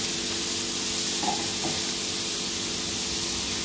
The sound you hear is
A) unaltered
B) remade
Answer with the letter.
A